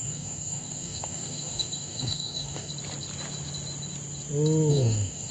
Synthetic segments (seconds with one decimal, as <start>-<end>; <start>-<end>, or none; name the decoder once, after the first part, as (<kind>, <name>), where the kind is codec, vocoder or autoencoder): 0.0-2.7 (codec, DAC); 4.7-5.3